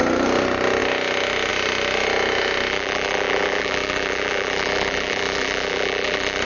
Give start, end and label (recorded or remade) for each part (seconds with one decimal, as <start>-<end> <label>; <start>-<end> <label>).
0.0-2.7 recorded; 2.7-6.4 remade